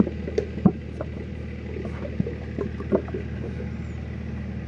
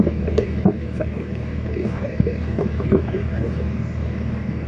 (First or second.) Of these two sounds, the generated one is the second